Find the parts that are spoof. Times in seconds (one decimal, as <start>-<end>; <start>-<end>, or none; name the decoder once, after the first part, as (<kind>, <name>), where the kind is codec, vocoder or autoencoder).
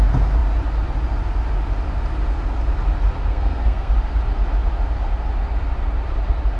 3.3-3.9 (codec, SNAC)